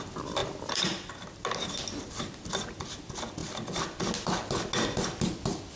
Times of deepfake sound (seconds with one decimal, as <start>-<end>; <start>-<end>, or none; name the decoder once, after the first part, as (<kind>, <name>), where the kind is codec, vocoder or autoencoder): 0.4-1.1 (vocoder, BigVGAN v2)